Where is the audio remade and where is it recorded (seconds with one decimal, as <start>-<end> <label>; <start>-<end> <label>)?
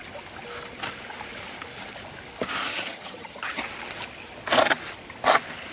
0.0-2.7 recorded; 2.7-3.6 remade; 3.6-5.7 recorded